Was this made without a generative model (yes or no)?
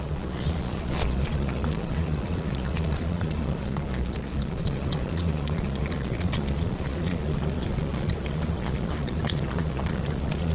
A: no